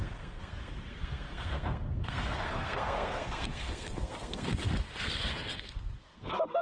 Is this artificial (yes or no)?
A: yes